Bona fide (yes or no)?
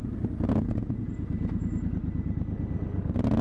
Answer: yes